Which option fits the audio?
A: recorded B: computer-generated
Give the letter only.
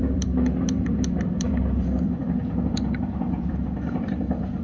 B